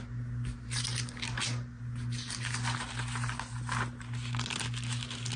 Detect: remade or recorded recorded